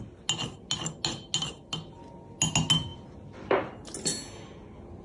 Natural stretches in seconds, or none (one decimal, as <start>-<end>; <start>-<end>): 0.0-5.0